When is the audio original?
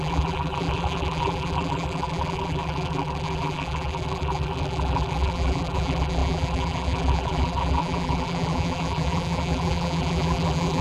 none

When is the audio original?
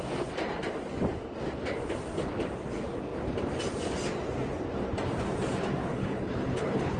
0.0-5.8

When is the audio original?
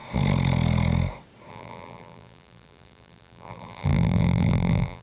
0.0-1.5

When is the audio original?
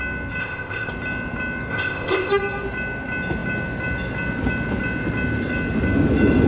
0.0-0.4; 0.9-1.7; 2.3-6.5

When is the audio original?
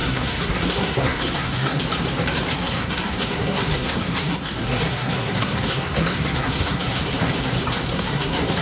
1.8-2.5; 7.0-7.9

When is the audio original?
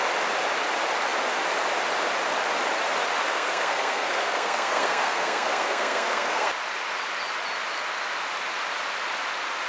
0.0-3.3; 6.5-9.7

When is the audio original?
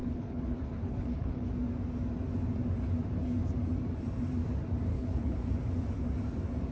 1.5-4.9; 5.5-6.7